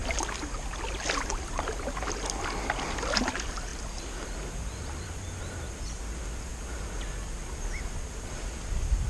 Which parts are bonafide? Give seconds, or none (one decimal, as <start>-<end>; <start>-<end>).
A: 0.0-9.1